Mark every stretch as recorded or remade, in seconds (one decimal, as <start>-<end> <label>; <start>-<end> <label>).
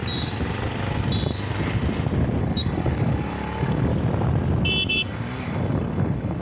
0.0-2.4 recorded; 2.4-3.9 remade; 3.9-4.9 recorded; 4.9-6.4 remade